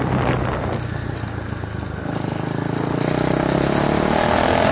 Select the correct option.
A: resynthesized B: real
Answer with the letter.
B